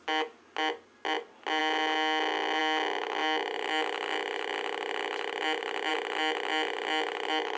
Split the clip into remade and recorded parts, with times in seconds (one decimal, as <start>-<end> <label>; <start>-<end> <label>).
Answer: 0.0-7.6 recorded